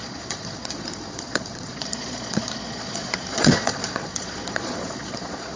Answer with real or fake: fake